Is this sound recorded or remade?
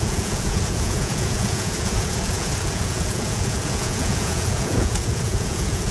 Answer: remade